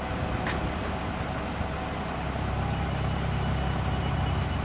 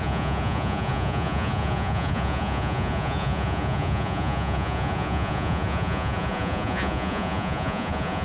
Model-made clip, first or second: second